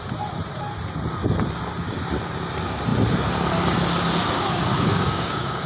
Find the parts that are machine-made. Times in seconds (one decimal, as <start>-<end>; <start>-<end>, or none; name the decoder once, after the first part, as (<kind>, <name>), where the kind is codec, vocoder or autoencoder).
4.2-5.7 (codec, DAC)